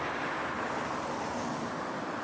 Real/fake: real